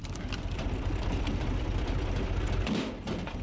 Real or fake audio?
real